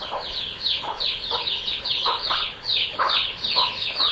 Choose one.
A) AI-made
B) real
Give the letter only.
A